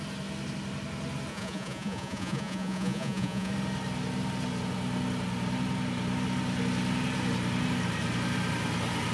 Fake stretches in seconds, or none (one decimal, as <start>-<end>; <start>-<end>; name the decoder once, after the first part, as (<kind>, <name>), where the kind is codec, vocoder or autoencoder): 1.3-3.5 (vocoder, Vocos)